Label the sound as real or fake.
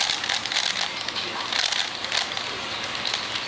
real